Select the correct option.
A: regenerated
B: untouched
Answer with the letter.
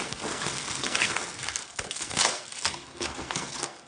A